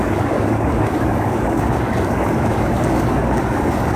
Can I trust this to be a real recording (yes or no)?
no